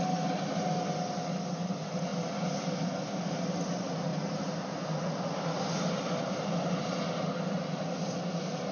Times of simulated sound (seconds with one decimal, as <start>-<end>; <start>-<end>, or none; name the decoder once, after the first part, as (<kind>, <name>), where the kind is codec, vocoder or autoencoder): none